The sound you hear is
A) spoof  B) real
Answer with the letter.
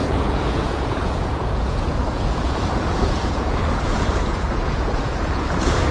A